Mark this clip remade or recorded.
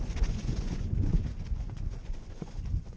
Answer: remade